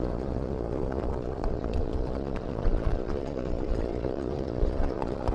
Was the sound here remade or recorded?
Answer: remade